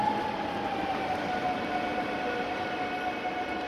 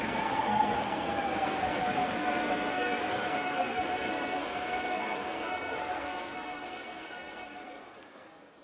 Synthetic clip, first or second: second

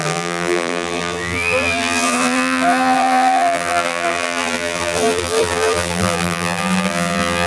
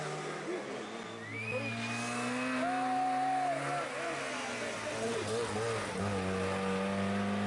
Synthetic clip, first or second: first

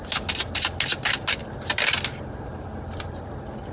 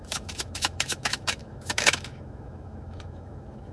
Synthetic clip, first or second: second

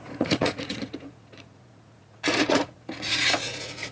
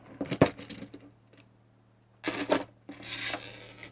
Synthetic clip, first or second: first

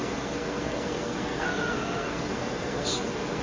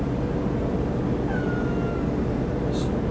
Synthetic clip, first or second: first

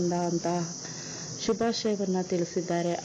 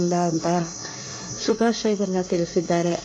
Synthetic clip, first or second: second